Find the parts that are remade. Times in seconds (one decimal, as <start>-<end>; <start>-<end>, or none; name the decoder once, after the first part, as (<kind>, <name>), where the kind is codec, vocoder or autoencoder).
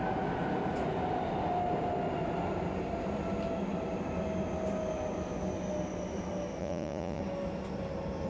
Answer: 6.6-7.2 (vocoder, Vocos)